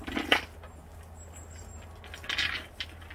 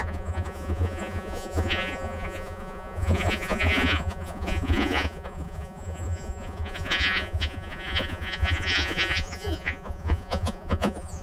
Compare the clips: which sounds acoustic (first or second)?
first